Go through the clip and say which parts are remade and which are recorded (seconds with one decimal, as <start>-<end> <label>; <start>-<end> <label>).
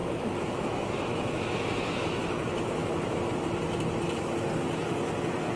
0.0-3.4 remade; 3.4-5.6 recorded